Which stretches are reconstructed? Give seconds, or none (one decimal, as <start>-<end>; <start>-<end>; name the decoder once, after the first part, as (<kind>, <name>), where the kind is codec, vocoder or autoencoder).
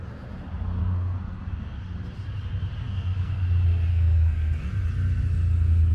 0.8-1.8 (codec, SNAC); 2.8-3.4; 3.9-4.7